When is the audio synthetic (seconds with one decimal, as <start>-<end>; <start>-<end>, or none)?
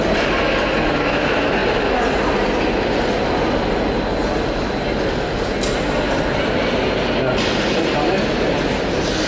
none